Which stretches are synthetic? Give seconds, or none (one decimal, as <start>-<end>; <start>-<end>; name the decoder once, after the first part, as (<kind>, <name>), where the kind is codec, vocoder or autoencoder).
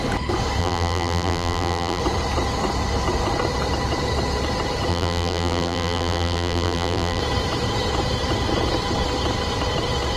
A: 0.6-2.0 (vocoder, BigVGAN v2); 4.9-7.2